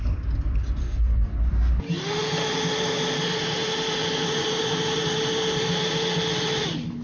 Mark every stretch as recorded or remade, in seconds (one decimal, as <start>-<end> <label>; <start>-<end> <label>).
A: 0.0-0.8 recorded; 0.8-1.4 remade; 1.4-7.0 recorded